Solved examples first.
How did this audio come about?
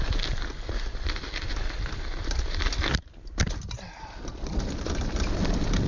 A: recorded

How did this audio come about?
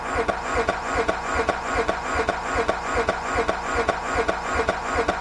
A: remade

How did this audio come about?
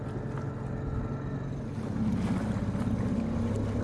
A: recorded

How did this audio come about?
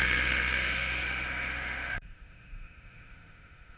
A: remade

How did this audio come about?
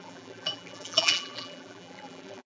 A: remade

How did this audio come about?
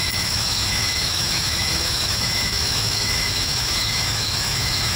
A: remade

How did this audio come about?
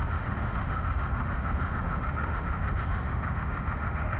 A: remade